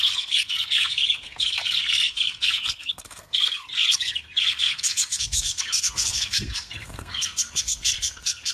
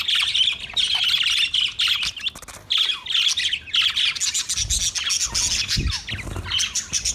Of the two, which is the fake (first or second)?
first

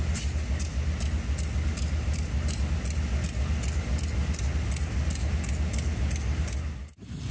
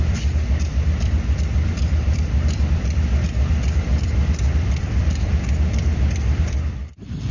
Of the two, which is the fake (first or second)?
second